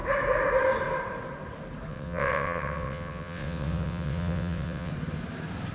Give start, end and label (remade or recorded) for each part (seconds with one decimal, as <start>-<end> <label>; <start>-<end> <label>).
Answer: 0.0-1.9 recorded; 1.9-4.9 remade; 4.9-5.7 recorded